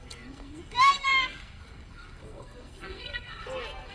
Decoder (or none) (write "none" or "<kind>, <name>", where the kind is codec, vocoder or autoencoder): codec, SNAC